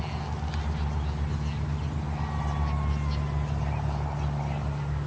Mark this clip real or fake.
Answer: real